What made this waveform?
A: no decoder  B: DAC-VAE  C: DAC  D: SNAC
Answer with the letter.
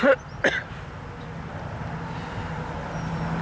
A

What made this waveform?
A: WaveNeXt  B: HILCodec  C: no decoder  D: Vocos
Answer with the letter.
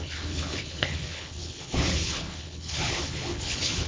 B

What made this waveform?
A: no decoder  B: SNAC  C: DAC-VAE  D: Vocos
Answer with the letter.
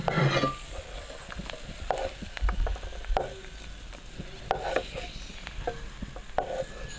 A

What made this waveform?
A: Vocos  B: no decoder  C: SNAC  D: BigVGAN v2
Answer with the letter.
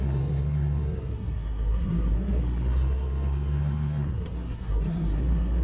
C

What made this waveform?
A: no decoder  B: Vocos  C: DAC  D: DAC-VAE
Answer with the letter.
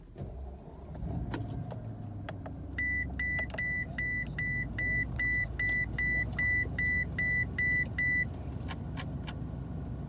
A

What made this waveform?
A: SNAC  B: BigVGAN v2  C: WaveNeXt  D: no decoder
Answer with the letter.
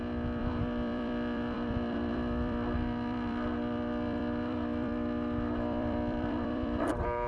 B